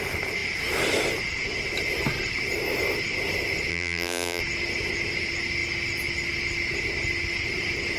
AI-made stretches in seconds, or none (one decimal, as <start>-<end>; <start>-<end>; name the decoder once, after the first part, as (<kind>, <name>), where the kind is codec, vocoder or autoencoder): 3.7-4.4 (vocoder, BigVGAN v2)